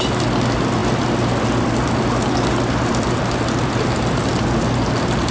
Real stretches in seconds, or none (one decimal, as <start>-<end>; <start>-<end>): 0.0-5.3